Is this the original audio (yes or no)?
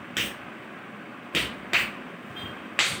yes